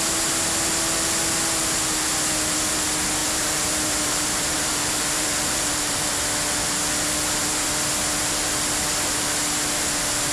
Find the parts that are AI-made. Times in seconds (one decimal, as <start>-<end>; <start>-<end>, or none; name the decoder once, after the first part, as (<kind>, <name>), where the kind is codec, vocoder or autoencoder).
3.2-6.2 (vocoder, BigVGAN v2)